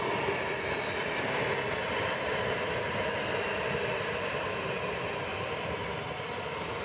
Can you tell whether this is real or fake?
real